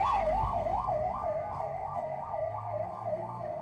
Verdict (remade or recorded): remade